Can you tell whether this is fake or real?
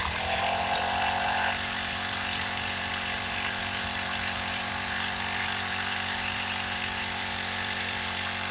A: fake